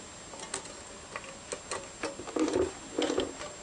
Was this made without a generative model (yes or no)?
yes